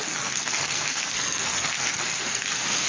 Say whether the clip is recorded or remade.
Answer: remade